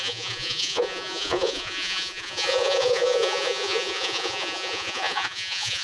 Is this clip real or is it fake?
fake